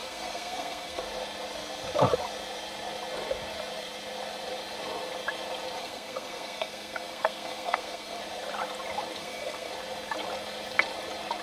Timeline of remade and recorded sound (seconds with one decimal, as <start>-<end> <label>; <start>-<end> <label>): 0.0-1.0 remade; 1.0-5.8 recorded; 5.8-8.2 remade; 8.2-9.2 recorded; 9.2-9.7 remade; 9.7-11.4 recorded